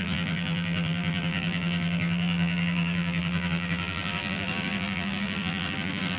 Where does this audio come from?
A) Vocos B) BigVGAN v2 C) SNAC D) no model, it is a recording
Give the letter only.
B